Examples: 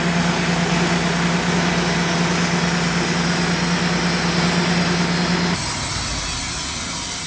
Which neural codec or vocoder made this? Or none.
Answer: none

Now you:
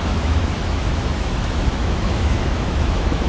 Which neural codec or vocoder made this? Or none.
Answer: autoencoder, DAC-VAE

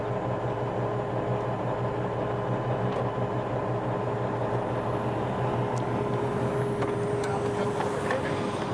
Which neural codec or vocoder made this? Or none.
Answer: none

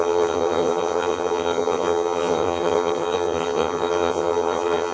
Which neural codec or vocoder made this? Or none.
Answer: vocoder, HiFi-GAN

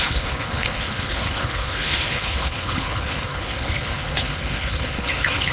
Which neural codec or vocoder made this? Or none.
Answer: codec, HILCodec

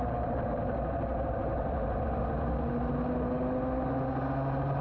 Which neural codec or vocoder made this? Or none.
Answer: none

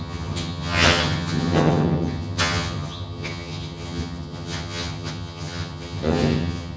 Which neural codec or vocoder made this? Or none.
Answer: vocoder, HiFi-GAN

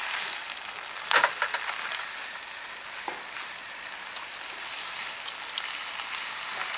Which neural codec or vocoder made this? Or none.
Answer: none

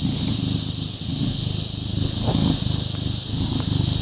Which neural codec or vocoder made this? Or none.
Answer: none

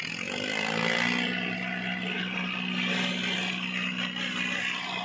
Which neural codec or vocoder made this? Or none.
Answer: none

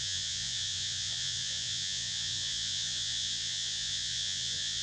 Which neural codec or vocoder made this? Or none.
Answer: vocoder, Vocos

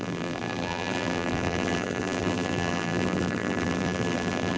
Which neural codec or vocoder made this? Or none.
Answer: vocoder, BigVGAN v2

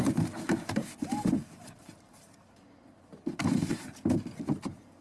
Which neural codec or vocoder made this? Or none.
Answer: vocoder, BigVGAN v2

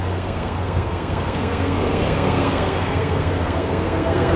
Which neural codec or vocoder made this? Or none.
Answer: codec, SNAC